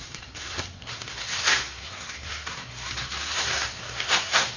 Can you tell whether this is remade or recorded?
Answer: remade